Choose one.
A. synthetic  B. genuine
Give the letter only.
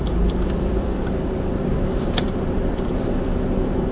A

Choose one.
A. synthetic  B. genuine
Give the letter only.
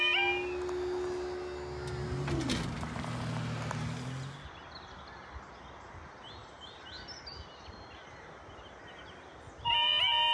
B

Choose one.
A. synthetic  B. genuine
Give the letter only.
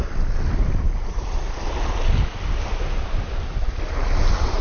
B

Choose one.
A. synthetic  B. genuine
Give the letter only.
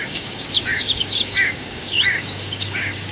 A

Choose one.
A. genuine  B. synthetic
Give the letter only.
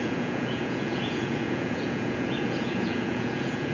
B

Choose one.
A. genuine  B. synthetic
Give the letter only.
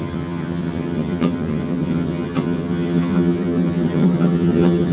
B